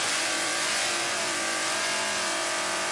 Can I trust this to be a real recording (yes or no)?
no